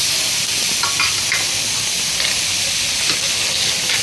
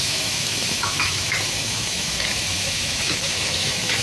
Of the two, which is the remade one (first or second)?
second